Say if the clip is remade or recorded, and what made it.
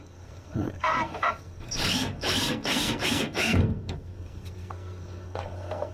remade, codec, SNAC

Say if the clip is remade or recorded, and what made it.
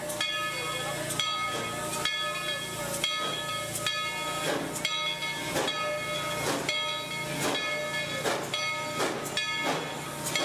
recorded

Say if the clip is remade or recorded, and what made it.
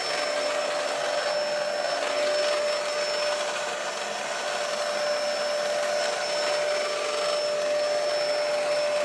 recorded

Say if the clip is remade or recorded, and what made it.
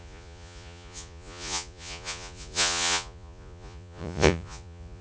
remade, vocoder, Vocos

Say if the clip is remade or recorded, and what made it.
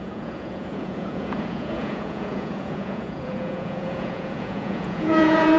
remade, vocoder, Vocos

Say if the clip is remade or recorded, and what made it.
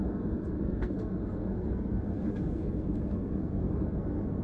remade, codec, SNAC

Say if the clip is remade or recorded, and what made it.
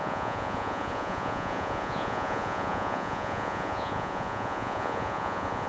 remade, vocoder, Vocos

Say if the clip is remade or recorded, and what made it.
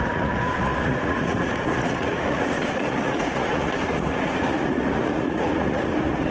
remade, vocoder, Vocos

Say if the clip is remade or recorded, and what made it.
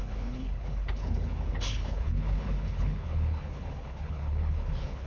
remade, codec, HILCodec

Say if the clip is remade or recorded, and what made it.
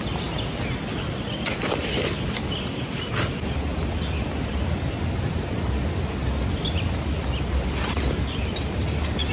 recorded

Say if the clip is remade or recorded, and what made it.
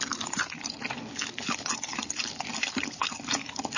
remade, vocoder, BigVGAN v2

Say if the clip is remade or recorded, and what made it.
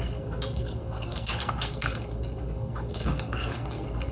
remade, codec, SNAC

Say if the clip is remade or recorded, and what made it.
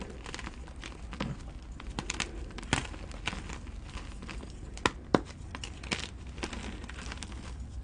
recorded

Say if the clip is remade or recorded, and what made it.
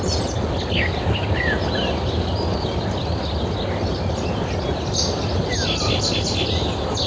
recorded